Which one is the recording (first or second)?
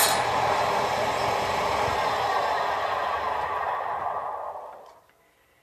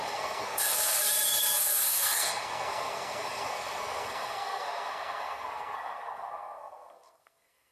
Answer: first